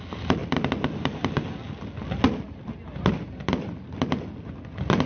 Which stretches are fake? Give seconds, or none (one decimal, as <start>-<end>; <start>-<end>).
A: none